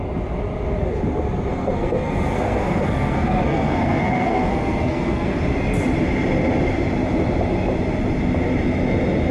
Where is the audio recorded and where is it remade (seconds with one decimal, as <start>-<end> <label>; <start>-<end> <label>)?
0.0-1.5 recorded; 1.5-5.4 remade; 5.4-9.3 recorded